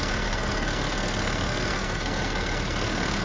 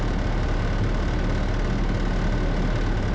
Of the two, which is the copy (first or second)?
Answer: first